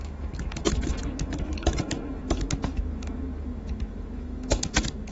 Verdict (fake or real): fake